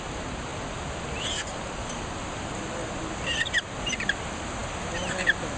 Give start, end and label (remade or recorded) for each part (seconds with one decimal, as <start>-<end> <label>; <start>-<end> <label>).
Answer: 0.0-5.6 recorded

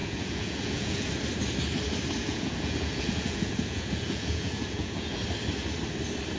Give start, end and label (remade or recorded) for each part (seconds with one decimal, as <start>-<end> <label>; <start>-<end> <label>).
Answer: 0.0-1.1 remade; 1.1-2.2 recorded; 2.2-5.2 remade; 5.2-6.4 recorded

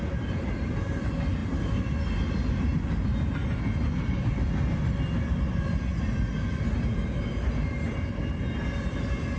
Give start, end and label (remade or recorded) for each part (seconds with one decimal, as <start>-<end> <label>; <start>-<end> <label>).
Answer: 0.0-9.4 recorded

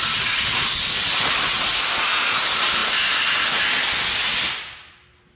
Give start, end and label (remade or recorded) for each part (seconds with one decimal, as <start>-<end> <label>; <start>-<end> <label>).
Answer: 0.0-5.4 recorded